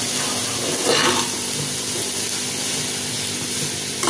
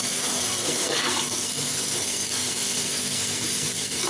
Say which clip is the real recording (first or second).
first